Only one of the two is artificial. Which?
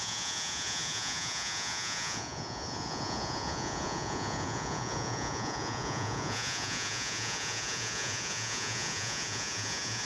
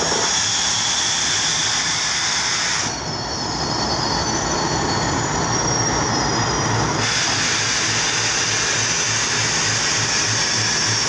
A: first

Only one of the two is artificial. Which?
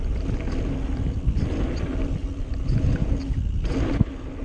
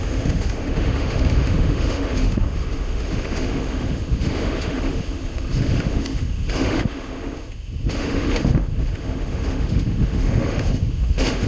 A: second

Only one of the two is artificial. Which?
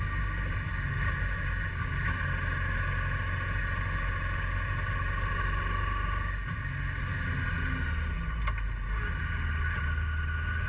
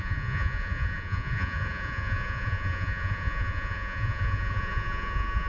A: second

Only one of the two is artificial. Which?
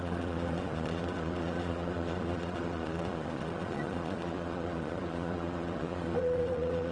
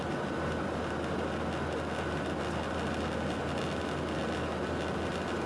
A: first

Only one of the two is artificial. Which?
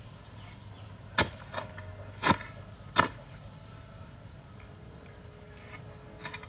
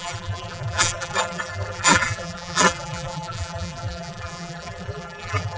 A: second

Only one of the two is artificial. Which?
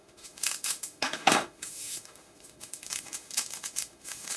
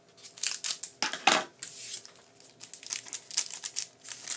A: first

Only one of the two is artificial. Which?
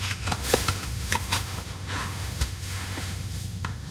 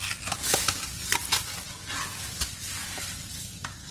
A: first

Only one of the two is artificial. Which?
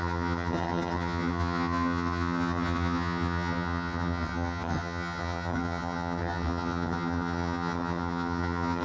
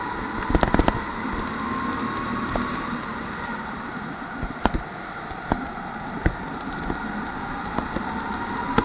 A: first